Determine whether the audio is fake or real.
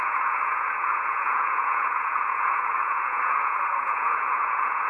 fake